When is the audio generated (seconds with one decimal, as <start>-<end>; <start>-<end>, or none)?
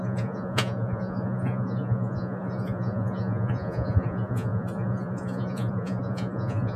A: 0.0-6.8